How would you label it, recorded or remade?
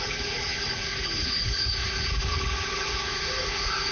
remade